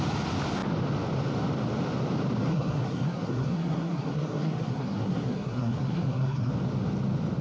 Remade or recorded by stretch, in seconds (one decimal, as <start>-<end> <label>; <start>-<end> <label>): 0.0-2.5 recorded; 2.5-6.5 remade; 6.5-7.4 recorded